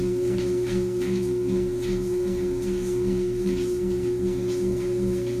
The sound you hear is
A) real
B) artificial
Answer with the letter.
B